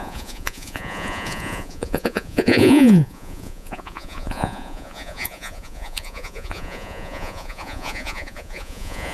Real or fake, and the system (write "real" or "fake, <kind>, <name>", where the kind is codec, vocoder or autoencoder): fake, vocoder, Vocos